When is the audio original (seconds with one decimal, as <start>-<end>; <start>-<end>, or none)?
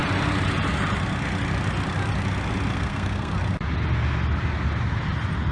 0.0-2.7; 3.3-5.5